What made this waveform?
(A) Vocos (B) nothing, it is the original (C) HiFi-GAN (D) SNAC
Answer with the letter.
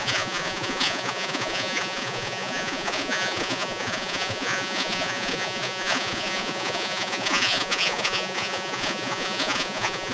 A